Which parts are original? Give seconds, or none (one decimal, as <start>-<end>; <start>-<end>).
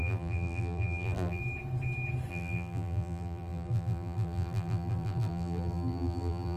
1.4-2.3